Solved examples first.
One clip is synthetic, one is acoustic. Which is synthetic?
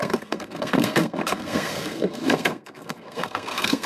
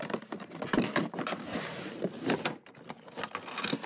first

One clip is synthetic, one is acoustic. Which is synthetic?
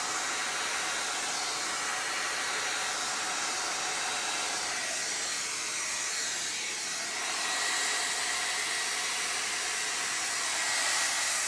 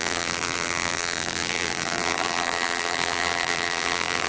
second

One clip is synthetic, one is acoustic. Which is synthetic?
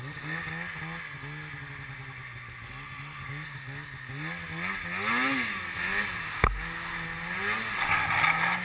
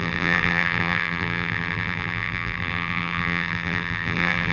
second